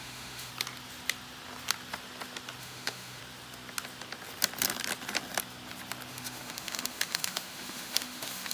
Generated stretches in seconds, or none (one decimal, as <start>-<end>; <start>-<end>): 0.0-0.5; 2.6-3.2; 6.1-8.5